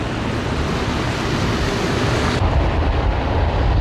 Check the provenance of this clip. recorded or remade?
recorded